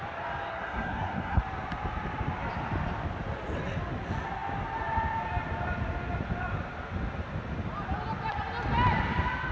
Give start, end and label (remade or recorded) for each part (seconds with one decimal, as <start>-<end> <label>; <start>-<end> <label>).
0.0-0.5 recorded; 0.5-1.4 remade; 1.4-9.5 recorded